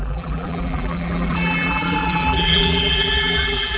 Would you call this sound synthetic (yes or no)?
yes